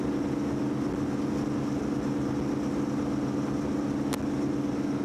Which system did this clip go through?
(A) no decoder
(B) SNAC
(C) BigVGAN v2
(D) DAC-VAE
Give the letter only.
A